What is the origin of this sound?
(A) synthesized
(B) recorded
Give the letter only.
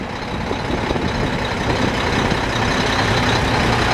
B